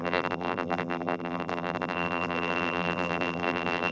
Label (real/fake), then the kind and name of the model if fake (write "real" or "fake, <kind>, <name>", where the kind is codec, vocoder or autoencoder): fake, vocoder, BigVGAN v2